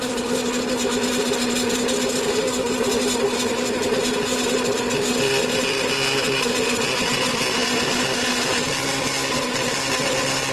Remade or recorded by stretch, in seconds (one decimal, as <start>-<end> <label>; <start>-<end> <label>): 0.0-10.5 recorded